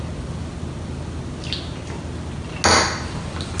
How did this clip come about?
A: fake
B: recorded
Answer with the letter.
B